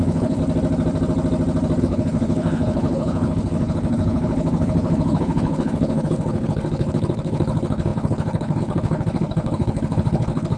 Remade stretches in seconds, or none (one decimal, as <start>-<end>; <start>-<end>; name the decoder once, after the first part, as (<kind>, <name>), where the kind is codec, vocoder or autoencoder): 0.0-0.4 (codec, HILCodec); 1.8-10.6

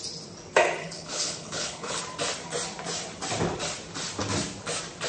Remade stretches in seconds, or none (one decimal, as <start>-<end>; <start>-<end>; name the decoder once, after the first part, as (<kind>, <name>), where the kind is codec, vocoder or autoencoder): 0.8-2.0 (codec, HILCodec)